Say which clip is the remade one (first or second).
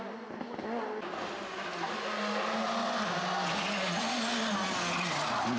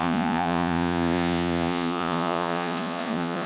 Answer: second